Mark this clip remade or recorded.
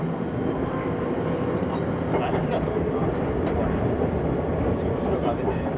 recorded